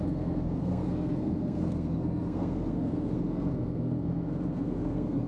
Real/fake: fake